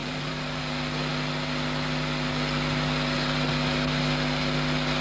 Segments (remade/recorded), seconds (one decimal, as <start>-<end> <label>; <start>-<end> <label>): 0.0-0.6 remade; 0.6-5.0 recorded